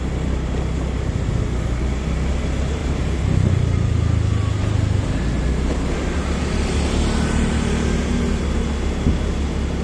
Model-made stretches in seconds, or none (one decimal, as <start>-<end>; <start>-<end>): none